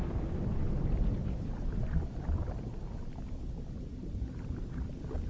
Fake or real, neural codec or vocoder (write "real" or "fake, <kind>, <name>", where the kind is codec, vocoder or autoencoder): real